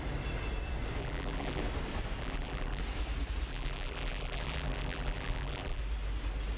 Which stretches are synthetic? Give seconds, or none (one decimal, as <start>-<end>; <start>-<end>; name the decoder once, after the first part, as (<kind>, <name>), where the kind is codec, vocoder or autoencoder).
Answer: 1.0-1.6 (vocoder, BigVGAN v2); 2.2-2.8; 3.5-5.8